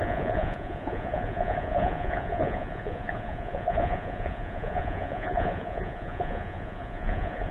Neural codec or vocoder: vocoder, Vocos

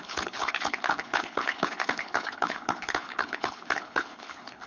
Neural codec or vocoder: codec, HILCodec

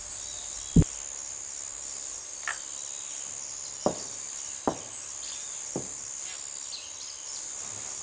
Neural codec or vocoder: none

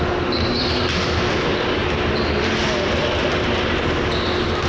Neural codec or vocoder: none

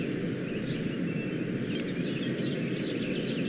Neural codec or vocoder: none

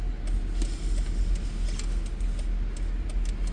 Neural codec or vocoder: none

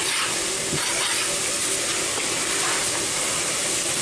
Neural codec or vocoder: none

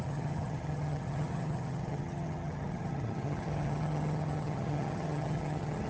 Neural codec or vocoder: vocoder, HiFi-GAN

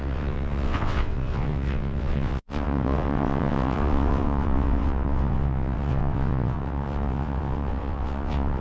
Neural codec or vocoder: vocoder, WaveNeXt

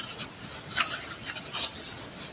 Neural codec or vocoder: none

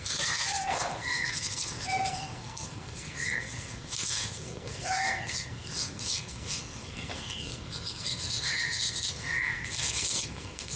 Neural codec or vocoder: codec, SNAC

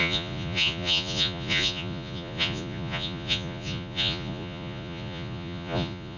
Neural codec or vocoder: vocoder, Vocos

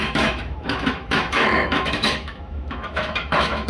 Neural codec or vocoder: autoencoder, DAC-VAE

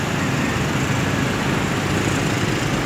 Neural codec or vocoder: none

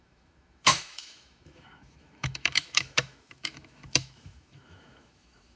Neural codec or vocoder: autoencoder, DAC-VAE